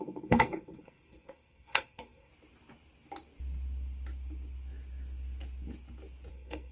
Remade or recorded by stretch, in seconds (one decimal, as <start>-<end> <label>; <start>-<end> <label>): 0.0-2.3 remade; 2.3-6.3 recorded; 6.3-6.7 remade